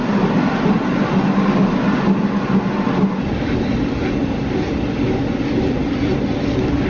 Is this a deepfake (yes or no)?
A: no